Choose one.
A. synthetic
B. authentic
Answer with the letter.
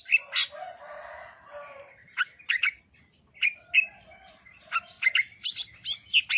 B